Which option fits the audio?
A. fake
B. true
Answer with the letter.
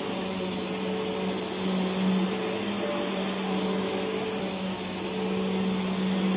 B